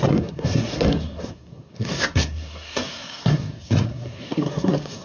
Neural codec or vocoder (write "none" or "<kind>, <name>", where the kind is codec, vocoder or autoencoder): codec, SNAC